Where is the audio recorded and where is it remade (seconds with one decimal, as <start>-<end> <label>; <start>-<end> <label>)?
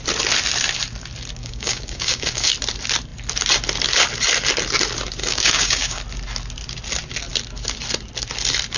0.0-1.4 recorded; 1.4-2.5 remade; 2.5-5.2 recorded; 5.2-6.0 remade; 6.0-8.8 recorded